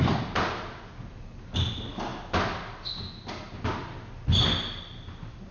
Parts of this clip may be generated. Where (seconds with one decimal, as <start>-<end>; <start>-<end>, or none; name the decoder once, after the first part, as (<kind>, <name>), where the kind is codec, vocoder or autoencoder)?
none